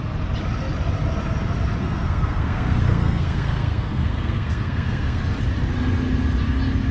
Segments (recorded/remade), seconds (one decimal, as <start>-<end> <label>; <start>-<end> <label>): 0.0-1.8 recorded; 1.8-5.2 remade; 5.2-6.9 recorded